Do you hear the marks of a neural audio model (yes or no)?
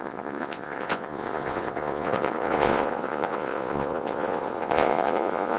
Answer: yes